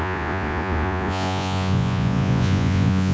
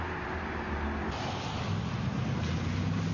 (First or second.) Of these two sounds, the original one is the second